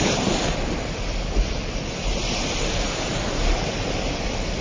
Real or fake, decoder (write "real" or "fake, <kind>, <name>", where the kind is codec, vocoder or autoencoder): fake, vocoder, BigVGAN v2